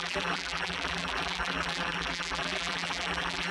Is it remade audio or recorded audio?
remade